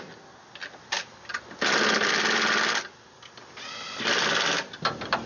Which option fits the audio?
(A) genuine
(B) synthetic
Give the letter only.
A